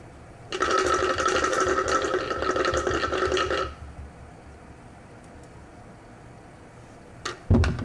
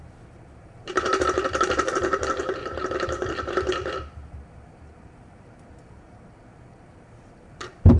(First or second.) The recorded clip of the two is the first